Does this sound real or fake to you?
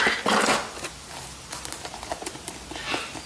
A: real